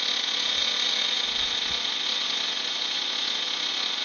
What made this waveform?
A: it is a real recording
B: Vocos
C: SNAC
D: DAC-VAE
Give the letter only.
B